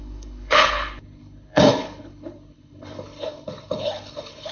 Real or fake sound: fake